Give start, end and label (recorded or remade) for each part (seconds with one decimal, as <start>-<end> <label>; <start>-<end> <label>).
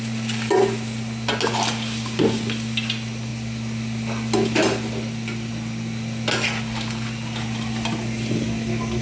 0.0-9.0 recorded